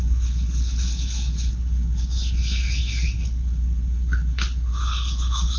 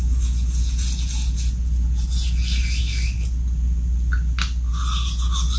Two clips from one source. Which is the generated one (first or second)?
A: first